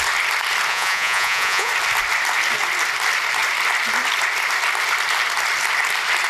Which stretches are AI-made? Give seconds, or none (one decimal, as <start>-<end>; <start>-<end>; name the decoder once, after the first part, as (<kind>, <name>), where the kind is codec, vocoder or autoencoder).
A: 0.7-1.7 (vocoder, Vocos)